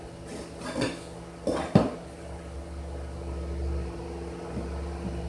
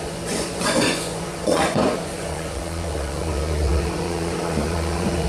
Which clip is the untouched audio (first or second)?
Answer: first